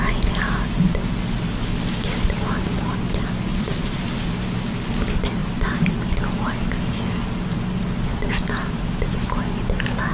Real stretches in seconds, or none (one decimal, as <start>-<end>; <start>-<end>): 0.0-3.5; 4.0-10.1